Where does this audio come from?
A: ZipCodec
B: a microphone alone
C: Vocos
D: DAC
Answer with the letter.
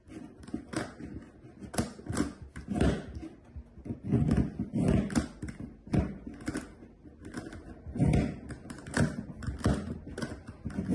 B